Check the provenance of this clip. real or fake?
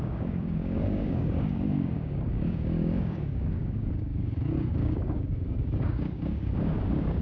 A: fake